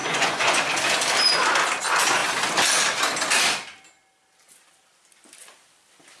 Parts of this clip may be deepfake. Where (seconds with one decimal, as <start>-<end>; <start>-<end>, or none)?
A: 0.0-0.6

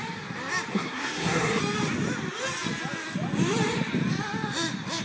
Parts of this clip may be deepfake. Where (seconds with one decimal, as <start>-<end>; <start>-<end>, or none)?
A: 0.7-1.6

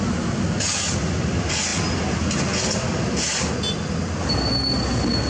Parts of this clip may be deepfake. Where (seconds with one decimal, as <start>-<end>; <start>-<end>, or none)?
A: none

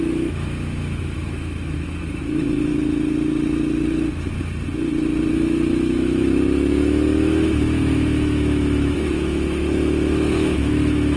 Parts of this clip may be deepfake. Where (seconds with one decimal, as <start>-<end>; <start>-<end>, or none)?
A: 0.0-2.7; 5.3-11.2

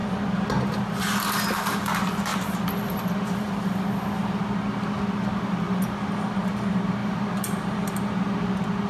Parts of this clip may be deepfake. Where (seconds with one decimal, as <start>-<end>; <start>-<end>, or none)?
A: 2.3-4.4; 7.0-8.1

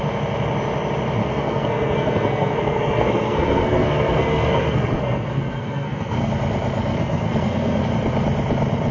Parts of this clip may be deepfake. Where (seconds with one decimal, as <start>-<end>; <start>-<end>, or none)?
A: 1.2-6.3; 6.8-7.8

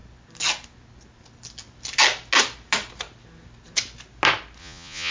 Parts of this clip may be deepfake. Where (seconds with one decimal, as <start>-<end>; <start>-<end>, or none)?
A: 4.6-5.1

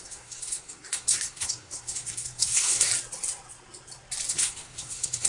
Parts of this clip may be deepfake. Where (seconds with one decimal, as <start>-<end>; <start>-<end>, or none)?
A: 0.0-2.9; 4.3-5.3